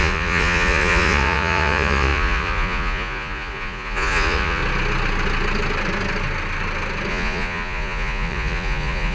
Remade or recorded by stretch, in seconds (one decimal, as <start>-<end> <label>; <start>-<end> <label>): 0.0-4.6 remade; 4.6-7.1 recorded; 7.1-9.1 remade